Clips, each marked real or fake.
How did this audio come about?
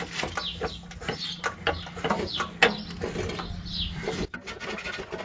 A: real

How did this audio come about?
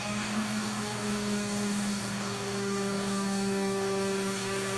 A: fake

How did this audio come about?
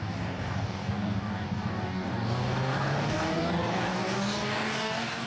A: fake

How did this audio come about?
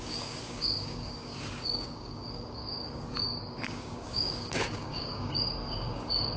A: fake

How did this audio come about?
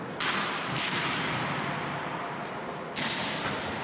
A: real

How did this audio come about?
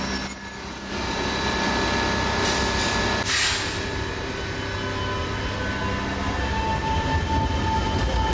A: real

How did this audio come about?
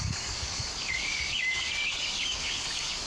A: fake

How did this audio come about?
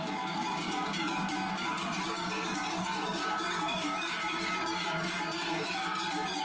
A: fake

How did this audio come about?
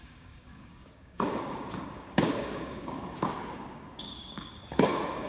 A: fake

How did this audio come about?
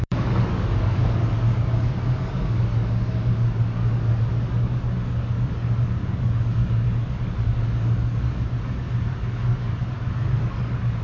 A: fake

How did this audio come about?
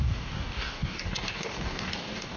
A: fake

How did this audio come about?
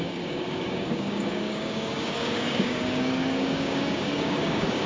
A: fake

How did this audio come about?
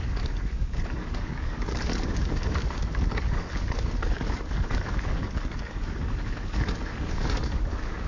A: fake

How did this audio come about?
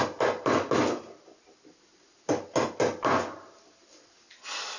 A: real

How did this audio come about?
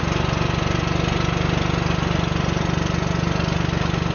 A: real